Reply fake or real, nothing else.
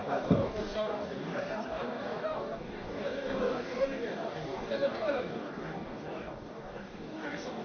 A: fake